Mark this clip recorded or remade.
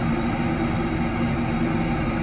recorded